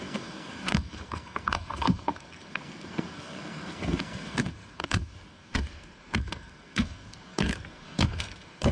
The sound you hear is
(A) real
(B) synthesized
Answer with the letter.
B